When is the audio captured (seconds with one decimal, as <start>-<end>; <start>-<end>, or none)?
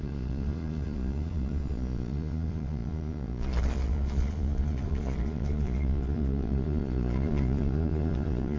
none